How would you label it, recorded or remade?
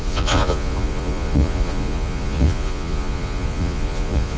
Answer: remade